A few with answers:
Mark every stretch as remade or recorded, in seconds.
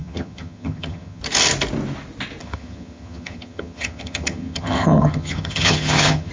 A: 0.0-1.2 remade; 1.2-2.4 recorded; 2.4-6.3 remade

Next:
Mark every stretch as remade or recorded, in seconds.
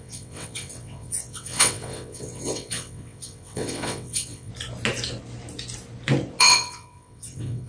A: 0.0-4.5 remade; 4.5-6.4 recorded; 6.4-7.7 remade